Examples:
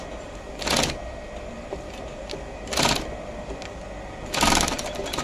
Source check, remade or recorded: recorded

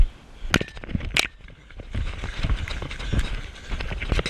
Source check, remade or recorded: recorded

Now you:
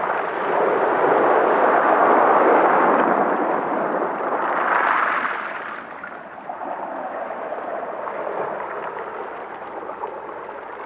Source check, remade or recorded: recorded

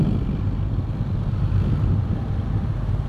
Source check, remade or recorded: recorded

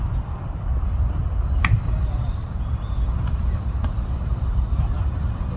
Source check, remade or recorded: remade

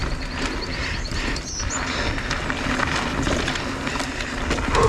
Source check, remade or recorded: recorded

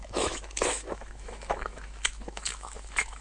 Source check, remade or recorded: remade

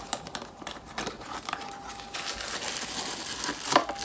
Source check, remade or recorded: recorded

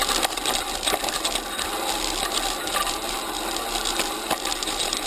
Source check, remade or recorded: recorded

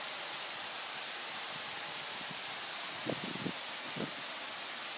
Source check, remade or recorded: recorded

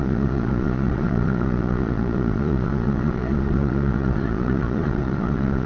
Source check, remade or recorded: remade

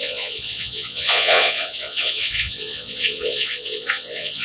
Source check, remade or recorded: remade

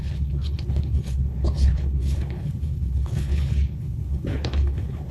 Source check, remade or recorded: remade